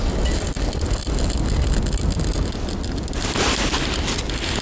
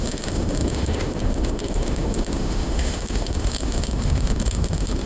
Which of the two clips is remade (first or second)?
second